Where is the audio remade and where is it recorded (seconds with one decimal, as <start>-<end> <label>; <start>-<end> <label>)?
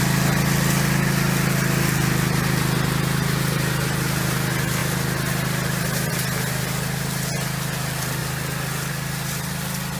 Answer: 0.0-10.0 recorded